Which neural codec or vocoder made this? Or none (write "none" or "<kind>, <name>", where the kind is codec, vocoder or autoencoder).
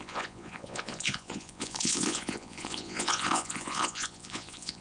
vocoder, Vocos